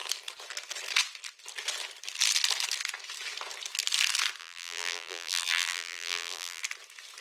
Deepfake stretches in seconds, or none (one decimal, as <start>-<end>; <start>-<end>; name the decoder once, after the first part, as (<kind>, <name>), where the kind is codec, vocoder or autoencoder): 4.4-6.6 (vocoder, BigVGAN v2)